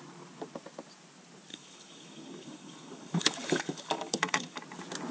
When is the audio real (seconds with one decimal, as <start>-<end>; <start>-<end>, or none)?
0.0-1.5; 4.6-5.1